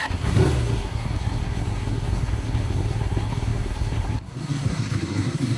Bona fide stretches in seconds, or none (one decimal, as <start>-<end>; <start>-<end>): none